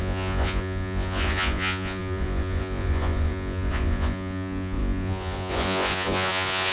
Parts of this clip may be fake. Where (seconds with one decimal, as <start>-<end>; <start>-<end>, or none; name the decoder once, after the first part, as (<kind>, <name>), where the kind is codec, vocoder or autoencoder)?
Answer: 0.0-6.7 (vocoder, Vocos)

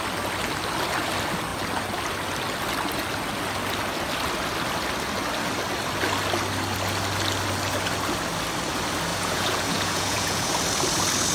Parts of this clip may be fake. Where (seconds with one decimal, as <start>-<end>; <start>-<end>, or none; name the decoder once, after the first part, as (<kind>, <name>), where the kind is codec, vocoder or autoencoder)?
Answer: 9.1-10.5 (vocoder, Vocos)

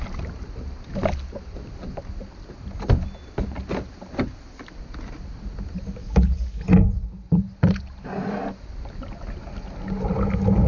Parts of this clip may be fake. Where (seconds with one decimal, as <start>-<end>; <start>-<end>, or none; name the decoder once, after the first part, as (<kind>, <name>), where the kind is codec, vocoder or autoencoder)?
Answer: 6.0-6.6 (codec, DAC)

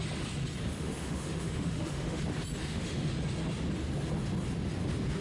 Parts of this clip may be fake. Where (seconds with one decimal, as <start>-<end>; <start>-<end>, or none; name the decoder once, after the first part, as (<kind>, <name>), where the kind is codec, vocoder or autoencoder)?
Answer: 0.7-2.2 (autoencoder, DAC-VAE); 2.6-3.1

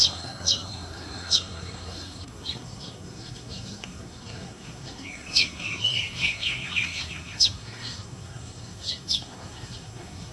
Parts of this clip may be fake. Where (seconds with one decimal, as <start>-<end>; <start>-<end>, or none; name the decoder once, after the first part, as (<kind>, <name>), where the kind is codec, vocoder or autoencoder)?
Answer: 0.0-10.3 (codec, SNAC)

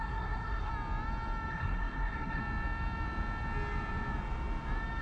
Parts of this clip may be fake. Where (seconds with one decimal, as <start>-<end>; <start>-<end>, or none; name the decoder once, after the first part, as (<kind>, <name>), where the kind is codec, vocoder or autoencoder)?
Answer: 0.0-0.7 (codec, SNAC); 1.5-2.4

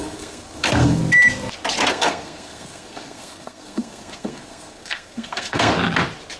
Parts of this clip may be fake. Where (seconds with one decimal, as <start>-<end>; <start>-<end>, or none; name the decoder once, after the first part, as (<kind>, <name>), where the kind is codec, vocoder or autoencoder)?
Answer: 0.0-1.0 (codec, SNAC); 1.9-5.7

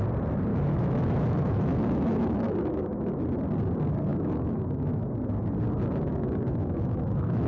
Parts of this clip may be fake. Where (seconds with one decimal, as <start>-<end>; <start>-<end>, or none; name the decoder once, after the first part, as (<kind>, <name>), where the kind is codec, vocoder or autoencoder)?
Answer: 0.5-3.2 (autoencoder, DAC-VAE); 4.1-5.1; 6.1-7.5